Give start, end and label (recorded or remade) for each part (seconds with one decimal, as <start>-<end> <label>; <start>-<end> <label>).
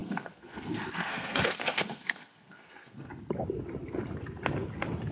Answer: 0.0-3.1 remade; 3.1-5.1 recorded